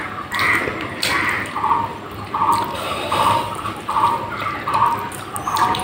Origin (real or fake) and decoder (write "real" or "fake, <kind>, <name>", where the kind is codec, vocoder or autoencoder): real